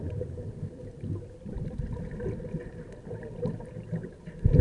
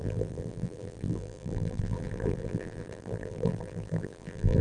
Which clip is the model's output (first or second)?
second